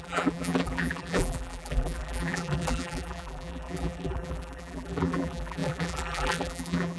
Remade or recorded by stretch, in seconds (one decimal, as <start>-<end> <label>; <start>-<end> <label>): 0.0-7.0 remade